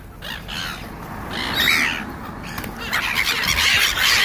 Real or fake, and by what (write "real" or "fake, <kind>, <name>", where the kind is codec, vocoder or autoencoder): real